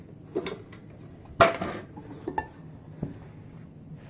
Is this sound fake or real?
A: real